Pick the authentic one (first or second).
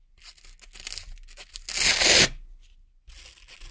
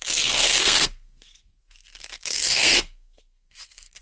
first